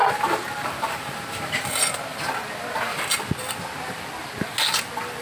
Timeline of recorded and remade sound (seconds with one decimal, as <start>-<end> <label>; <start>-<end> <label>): 0.0-5.2 recorded